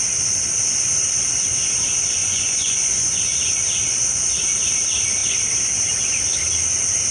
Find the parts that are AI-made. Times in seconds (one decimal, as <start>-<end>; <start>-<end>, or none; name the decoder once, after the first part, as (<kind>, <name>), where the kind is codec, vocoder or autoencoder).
2.2-3.2 (vocoder, Vocos)